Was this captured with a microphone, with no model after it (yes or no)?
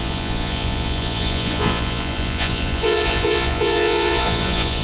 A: no